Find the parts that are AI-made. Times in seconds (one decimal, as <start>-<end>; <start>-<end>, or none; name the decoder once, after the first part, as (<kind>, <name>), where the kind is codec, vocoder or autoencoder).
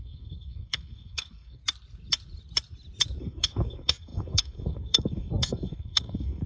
0.0-1.6 (codec, SNAC); 3.2-6.5